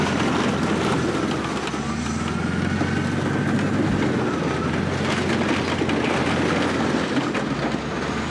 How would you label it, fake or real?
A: real